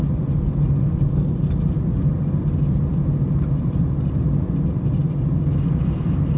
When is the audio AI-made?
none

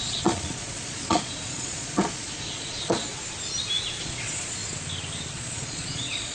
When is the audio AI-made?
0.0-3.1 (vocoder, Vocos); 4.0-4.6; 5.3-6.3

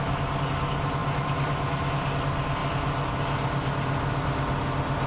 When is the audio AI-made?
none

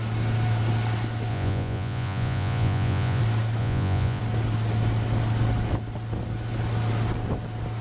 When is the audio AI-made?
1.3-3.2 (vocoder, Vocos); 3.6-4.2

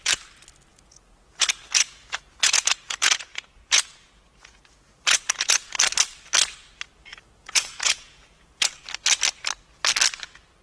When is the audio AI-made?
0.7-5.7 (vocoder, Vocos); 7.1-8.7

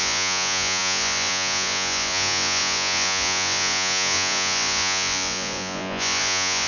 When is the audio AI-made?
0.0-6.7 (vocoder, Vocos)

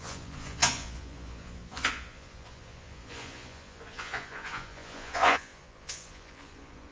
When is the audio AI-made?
0.0-6.9 (vocoder, Vocos)